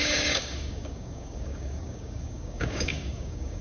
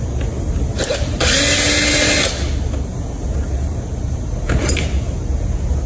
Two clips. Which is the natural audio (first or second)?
second